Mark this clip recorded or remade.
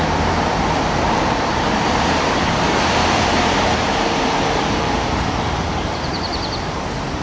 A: remade